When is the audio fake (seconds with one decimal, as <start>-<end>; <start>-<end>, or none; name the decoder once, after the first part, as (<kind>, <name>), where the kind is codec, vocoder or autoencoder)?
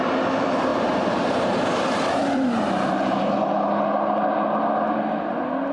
0.7-3.2 (vocoder, BigVGAN v2)